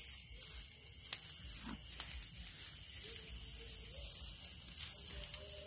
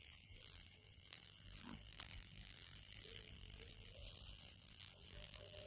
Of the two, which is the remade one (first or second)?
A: second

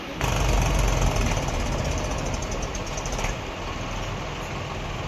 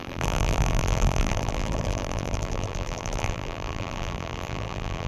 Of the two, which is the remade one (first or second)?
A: second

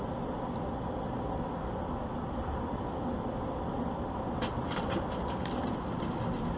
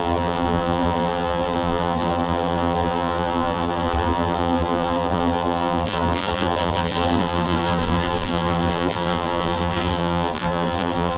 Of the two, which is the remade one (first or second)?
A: second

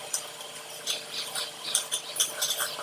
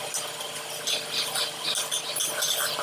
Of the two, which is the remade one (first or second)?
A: first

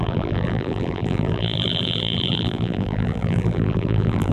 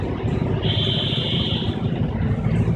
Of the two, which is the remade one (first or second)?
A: first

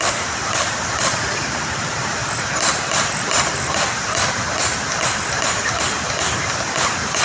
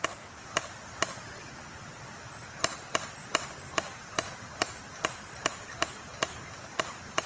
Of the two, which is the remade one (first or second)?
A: first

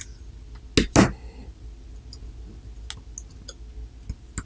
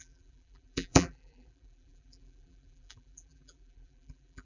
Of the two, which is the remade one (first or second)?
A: second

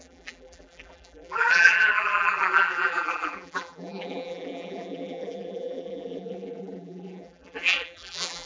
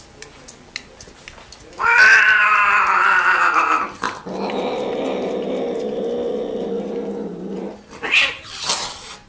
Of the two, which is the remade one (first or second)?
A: first